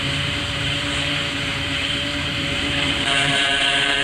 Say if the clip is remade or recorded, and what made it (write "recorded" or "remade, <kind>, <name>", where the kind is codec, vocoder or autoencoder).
remade, vocoder, BigVGAN v2